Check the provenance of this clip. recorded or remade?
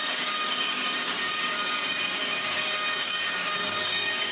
remade